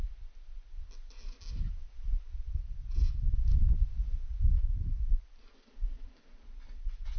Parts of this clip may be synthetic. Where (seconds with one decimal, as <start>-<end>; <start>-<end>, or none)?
none